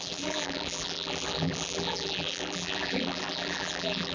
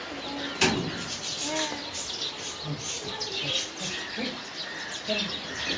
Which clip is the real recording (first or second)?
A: second